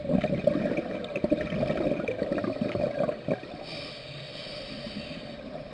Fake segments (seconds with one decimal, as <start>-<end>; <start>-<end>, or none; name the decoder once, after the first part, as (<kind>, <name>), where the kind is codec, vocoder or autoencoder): none